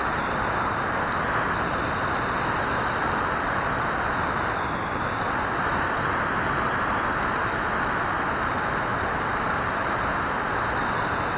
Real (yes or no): yes